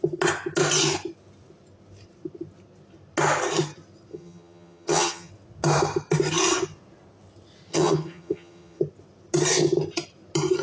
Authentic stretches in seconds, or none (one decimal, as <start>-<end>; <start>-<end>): 0.0-4.1; 5.3-7.7; 8.8-10.6